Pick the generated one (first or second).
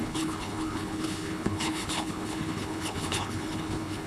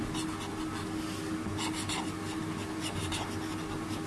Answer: first